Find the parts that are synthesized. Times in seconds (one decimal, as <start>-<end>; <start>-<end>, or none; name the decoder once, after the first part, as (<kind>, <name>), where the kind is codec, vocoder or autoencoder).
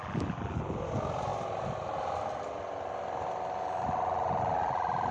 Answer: none